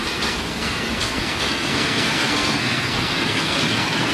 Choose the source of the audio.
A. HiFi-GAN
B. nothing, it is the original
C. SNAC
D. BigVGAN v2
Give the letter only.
C